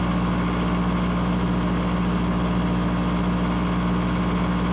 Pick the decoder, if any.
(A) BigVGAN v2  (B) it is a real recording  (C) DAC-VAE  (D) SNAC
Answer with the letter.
B